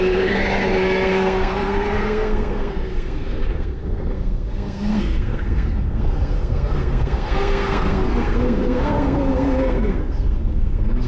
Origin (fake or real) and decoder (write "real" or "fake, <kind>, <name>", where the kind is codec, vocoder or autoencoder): fake, codec, SNAC